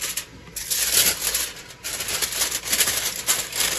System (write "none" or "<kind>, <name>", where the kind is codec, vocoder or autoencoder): none